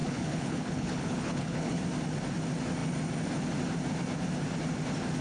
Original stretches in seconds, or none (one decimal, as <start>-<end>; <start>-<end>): 1.8-5.2